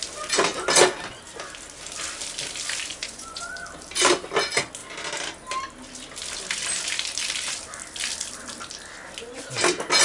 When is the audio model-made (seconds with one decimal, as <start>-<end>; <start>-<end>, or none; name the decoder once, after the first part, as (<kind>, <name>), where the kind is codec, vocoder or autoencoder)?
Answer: 2.9-3.5 (vocoder, Vocos)